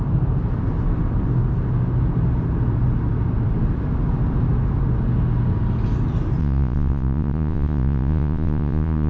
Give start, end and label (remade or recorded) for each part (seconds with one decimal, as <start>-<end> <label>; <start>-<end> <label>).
0.0-6.4 recorded; 6.4-9.1 remade